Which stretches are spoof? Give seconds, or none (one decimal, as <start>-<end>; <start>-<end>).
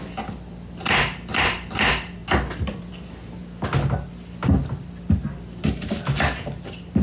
none